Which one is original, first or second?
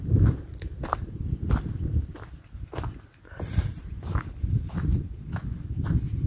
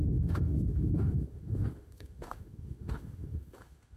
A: first